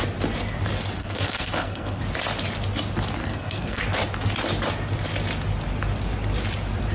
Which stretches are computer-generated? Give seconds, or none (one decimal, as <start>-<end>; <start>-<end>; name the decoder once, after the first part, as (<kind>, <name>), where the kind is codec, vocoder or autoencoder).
1.0-2.0 (codec, SNAC); 3.2-3.8